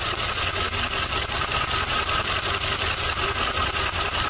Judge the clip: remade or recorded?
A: recorded